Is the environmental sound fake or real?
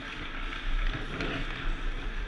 real